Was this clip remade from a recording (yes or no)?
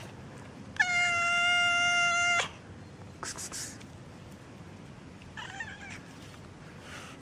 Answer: no